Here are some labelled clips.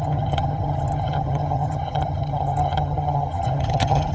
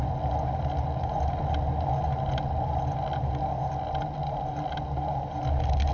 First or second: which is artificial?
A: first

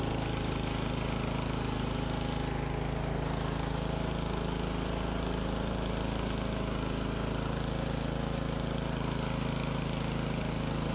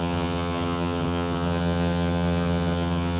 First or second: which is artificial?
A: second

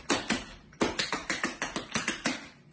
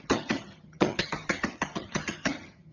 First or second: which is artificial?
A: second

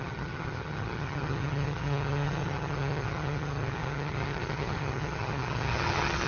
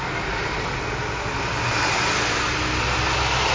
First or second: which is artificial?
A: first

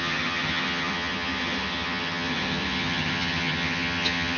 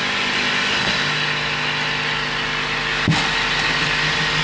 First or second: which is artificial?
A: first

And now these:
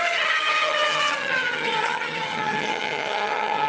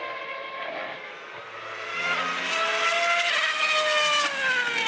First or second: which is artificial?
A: first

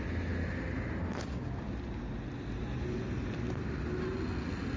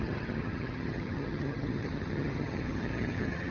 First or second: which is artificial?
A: second